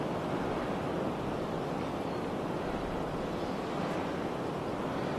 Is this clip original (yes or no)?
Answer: yes